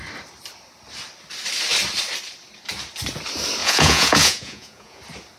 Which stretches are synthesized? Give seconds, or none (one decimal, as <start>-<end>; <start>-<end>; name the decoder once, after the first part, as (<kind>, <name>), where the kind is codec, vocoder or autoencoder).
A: 3.6-5.0 (vocoder, Vocos)